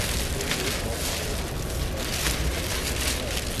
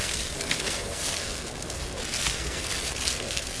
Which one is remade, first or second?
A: second